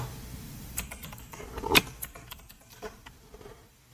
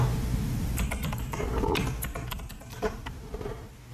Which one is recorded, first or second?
second